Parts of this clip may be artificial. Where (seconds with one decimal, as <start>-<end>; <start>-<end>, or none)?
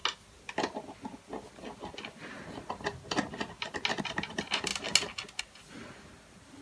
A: 4.0-4.7; 5.4-6.6